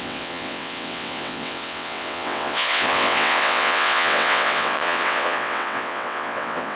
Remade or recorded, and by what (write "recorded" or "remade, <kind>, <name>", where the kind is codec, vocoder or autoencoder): remade, vocoder, WaveNeXt